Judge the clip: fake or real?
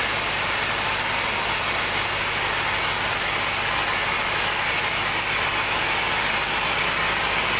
real